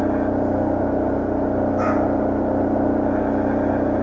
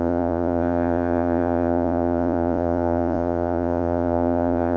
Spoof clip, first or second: second